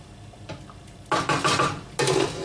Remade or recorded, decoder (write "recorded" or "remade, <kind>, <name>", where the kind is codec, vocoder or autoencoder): recorded